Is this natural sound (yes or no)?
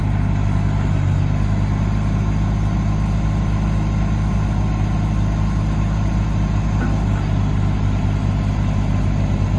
yes